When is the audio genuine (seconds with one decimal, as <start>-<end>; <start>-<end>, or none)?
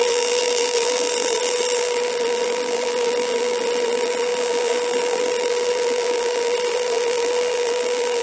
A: none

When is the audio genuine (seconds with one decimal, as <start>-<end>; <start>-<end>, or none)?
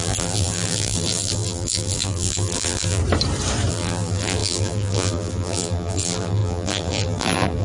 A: 3.0-3.7